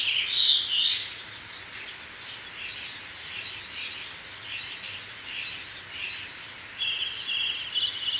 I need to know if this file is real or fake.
real